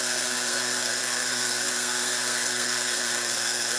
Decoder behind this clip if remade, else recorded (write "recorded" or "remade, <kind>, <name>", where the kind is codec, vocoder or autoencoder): remade, codec, SNAC